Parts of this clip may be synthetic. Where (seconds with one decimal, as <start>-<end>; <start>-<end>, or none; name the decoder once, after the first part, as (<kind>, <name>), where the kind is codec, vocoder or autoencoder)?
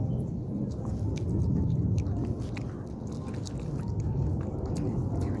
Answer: none